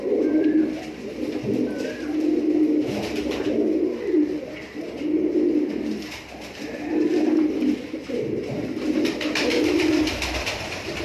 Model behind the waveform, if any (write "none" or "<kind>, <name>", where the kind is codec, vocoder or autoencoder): vocoder, BigVGAN v2